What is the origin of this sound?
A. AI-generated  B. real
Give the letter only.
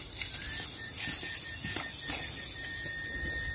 B